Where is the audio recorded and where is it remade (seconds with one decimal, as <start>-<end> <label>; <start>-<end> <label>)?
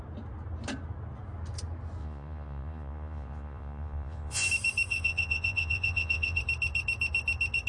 0.0-2.0 recorded; 2.0-4.5 remade; 4.5-4.9 recorded; 4.9-6.4 remade; 6.4-7.7 recorded